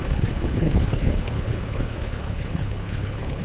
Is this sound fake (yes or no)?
yes